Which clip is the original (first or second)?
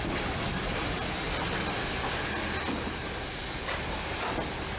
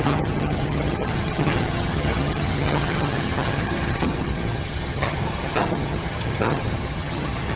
first